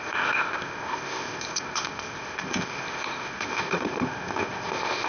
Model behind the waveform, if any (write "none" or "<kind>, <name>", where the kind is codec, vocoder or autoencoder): codec, ZipCodec